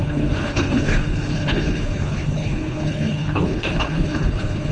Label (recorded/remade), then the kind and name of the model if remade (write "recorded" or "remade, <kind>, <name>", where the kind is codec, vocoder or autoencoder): remade, codec, HILCodec